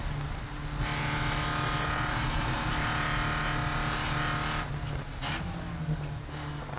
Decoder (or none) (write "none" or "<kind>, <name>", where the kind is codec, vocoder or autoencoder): none